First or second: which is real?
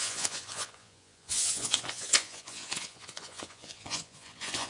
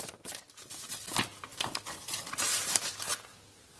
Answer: second